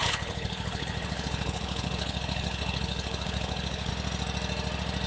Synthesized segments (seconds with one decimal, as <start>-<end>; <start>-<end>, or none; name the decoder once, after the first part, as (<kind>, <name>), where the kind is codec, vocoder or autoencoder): 0.0-3.9 (codec, HILCodec)